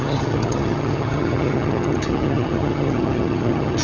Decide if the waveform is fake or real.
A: fake